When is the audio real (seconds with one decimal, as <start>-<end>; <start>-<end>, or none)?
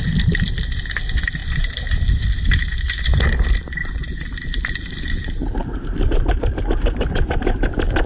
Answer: 0.0-1.4; 3.0-3.8; 6.6-8.1